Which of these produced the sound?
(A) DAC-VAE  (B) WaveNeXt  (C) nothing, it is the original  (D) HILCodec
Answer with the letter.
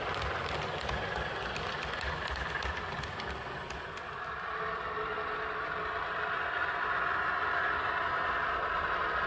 C